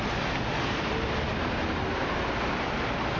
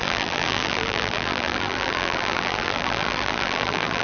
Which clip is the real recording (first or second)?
first